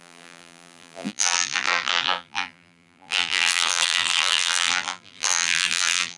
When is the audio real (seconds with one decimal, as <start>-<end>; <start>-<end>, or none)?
none